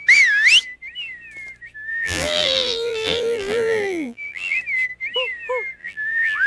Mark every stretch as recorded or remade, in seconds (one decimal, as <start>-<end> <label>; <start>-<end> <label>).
0.0-1.9 recorded; 1.9-4.6 remade; 4.6-5.8 recorded; 5.8-6.5 remade